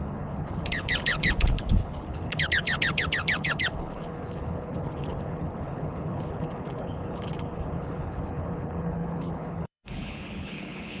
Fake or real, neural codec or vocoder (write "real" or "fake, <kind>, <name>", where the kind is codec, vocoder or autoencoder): fake, codec, HILCodec